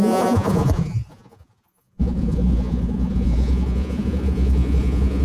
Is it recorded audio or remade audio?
remade